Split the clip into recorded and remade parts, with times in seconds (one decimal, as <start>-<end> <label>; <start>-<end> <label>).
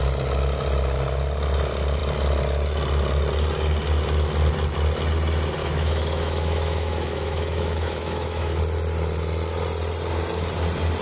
0.0-5.6 recorded; 5.6-8.6 remade; 8.6-11.0 recorded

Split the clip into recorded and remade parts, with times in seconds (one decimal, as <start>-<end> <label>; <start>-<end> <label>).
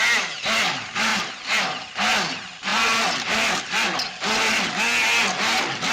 0.0-5.9 recorded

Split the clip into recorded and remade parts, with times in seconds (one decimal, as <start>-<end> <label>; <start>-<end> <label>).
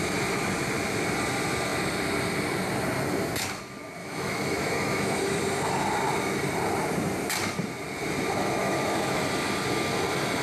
0.0-4.0 recorded; 4.0-5.4 remade; 5.4-8.6 recorded; 8.6-9.2 remade; 9.2-10.4 recorded